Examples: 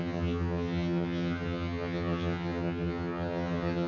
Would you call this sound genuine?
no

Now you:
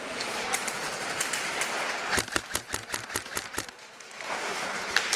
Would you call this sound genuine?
no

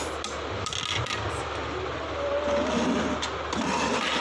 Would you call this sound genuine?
yes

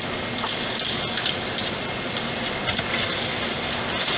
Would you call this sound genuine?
yes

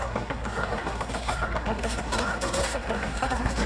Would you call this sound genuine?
no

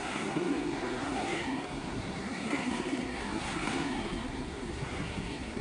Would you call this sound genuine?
no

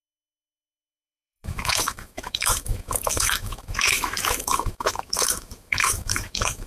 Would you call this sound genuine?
no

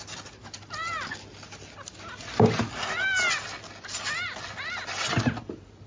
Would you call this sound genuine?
yes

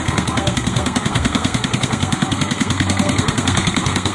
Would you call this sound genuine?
no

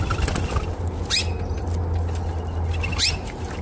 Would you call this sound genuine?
yes